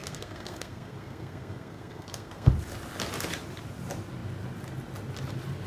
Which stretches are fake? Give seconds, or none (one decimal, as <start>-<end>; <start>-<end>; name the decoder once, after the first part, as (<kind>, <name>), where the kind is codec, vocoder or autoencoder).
0.0-2.5 (codec, SNAC)